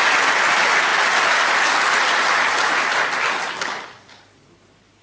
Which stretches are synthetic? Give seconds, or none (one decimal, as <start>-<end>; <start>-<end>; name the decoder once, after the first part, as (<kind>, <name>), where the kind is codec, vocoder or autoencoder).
none